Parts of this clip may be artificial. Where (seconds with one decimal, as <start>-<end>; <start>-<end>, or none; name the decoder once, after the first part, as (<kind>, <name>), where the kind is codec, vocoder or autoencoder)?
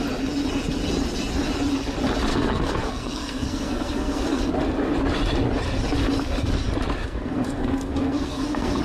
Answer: 2.3-4.4 (codec, SNAC); 7.0-8.8